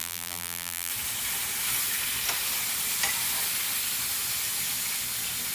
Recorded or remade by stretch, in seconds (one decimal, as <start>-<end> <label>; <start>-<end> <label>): 0.0-0.9 remade; 0.9-5.5 recorded